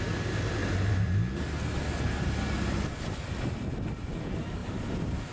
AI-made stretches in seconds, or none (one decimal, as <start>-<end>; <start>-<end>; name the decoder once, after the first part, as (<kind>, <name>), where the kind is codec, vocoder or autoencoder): 4.6-5.3 (vocoder, BigVGAN v2)